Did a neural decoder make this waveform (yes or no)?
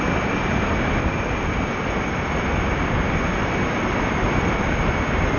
no